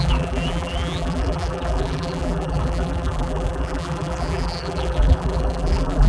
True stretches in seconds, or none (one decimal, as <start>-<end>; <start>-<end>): none